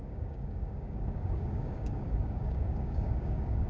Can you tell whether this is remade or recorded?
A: remade